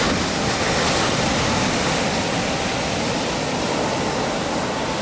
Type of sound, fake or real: real